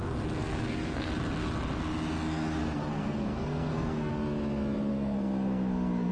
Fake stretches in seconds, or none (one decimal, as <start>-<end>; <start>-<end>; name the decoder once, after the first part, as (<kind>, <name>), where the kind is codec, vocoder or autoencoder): 0.4-1.1 (codec, SNAC); 2.6-4.1; 4.9-6.1